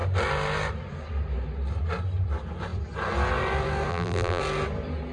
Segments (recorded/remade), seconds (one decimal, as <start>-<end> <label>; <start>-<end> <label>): 0.0-3.9 recorded; 3.9-4.4 remade; 4.4-5.1 recorded